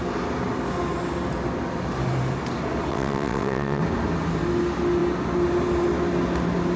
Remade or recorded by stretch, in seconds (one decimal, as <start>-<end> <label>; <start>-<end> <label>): 0.0-2.9 recorded; 2.9-3.8 remade; 3.8-6.8 recorded